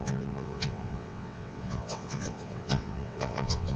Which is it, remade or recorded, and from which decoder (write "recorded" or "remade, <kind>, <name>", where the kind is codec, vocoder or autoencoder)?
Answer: remade, vocoder, WaveNeXt